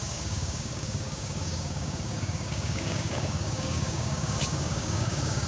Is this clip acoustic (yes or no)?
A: no